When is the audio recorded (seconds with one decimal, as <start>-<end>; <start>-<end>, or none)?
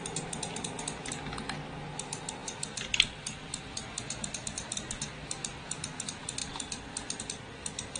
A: 0.0-8.0